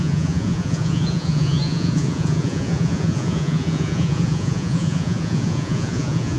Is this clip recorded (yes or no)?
no